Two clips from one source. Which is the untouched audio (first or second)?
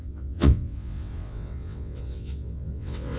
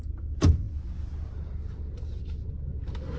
second